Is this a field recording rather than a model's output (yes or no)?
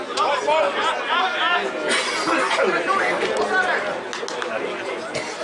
yes